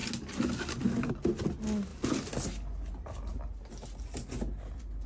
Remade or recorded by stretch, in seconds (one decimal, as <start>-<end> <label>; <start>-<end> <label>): 0.0-5.1 recorded